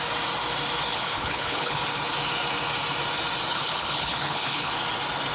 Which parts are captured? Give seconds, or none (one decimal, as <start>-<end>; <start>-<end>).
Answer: 0.0-0.9; 1.8-3.5; 4.7-5.3